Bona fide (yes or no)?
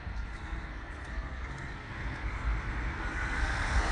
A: no